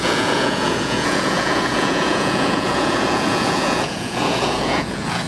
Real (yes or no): no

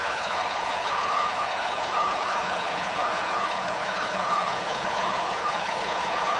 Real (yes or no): no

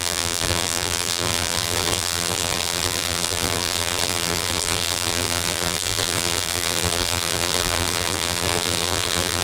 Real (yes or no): no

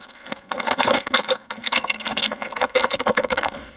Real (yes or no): no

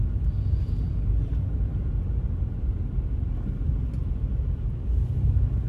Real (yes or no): yes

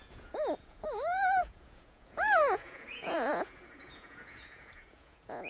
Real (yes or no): no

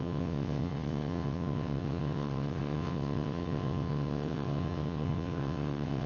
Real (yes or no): no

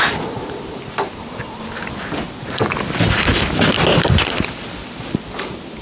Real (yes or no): no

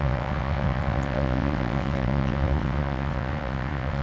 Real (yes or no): no